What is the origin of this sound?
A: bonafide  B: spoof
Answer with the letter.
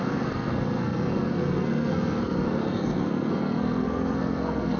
B